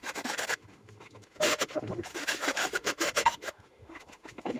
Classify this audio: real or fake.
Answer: fake